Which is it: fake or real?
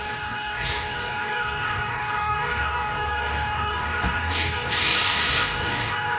fake